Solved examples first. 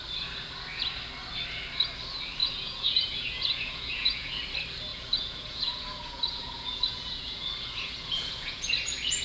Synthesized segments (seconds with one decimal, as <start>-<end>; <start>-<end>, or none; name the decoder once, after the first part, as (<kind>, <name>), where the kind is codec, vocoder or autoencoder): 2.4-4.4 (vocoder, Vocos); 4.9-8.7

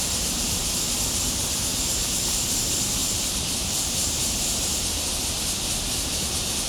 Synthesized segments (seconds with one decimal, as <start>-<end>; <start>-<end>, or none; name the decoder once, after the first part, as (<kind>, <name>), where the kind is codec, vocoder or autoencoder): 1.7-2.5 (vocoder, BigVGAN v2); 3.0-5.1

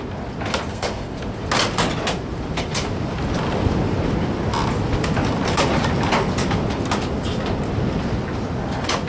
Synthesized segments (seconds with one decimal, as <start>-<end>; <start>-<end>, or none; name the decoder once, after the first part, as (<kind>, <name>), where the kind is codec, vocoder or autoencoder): 0.7-1.2 (codec, SNAC)

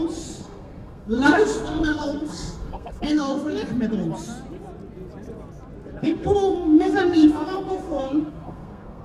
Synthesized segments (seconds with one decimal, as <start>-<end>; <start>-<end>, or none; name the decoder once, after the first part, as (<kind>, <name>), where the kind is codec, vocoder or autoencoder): 0.4-3.7 (codec, SNAC); 6.0-9.0